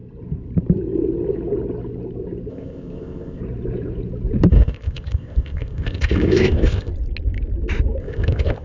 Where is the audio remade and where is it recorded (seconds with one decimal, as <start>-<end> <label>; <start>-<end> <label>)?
0.0-2.5 recorded; 2.5-3.4 remade; 3.4-4.5 recorded; 4.5-6.9 remade; 6.9-8.0 recorded; 8.0-8.6 remade